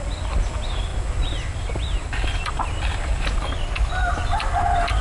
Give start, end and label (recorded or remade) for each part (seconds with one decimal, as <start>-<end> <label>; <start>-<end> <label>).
0.0-5.0 recorded

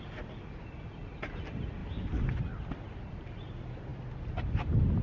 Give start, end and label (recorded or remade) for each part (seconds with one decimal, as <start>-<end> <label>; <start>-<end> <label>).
0.0-5.0 recorded

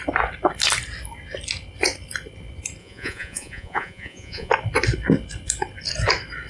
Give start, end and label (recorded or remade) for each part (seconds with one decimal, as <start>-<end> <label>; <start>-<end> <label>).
0.0-2.8 recorded; 2.8-4.5 remade; 4.5-6.5 recorded

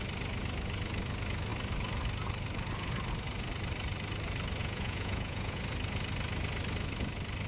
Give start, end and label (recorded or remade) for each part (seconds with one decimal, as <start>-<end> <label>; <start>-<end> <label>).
0.0-4.6 recorded; 4.6-5.6 remade; 5.6-7.5 recorded

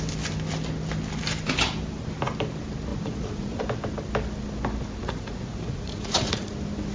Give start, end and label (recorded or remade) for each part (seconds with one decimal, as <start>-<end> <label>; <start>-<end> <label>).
0.0-2.9 recorded; 2.9-3.6 remade; 3.6-5.0 recorded; 5.0-6.5 remade; 6.5-6.9 recorded

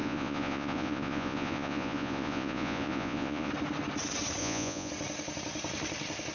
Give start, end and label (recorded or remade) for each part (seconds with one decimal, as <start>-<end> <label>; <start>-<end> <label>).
0.0-3.5 remade; 3.5-4.4 recorded; 4.4-4.9 remade; 4.9-6.3 recorded

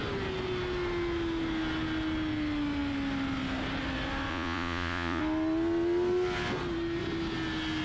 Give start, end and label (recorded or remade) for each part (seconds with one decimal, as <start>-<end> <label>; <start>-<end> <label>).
0.0-4.3 recorded; 4.3-5.2 remade; 5.2-7.8 recorded